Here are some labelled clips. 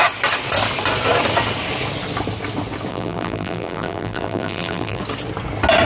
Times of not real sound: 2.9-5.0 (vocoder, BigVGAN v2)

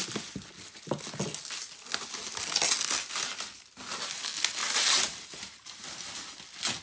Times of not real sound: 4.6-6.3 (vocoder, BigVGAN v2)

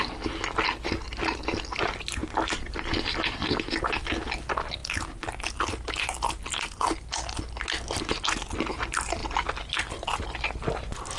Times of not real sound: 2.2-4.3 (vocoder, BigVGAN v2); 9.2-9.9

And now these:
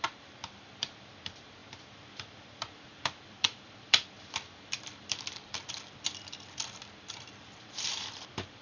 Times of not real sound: 0.0-8.6 (vocoder, BigVGAN v2)